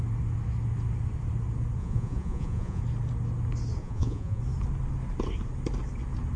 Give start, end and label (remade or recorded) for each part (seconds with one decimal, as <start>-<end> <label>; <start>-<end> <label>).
0.0-1.8 recorded; 1.8-2.8 remade; 2.8-3.8 recorded; 3.8-4.4 remade; 4.4-6.4 recorded